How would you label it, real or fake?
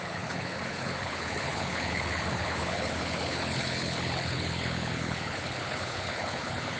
fake